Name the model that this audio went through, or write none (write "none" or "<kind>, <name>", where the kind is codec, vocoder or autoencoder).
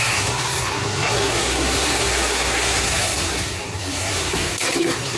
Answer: codec, SNAC